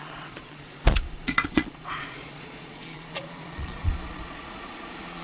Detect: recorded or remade remade